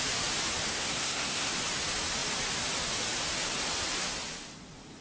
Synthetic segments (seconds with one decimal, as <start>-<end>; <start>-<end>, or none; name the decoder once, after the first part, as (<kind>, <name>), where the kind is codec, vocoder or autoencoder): 0.7-1.5 (codec, SNAC)